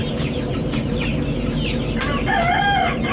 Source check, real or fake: fake